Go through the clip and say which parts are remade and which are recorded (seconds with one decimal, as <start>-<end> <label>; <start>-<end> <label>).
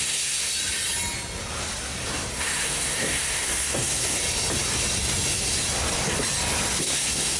0.0-0.5 remade; 0.5-2.1 recorded; 2.1-4.2 remade; 4.2-6.8 recorded; 6.8-7.4 remade